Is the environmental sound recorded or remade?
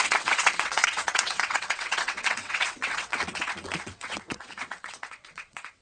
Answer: remade